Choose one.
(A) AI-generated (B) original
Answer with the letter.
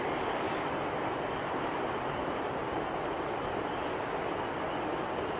B